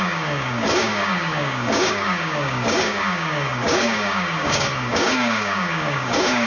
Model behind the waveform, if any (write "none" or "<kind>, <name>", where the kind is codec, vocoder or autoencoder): codec, DAC